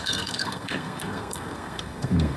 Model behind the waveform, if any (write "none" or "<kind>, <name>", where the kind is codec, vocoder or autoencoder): codec, SNAC